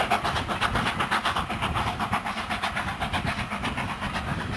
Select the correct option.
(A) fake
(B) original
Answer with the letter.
B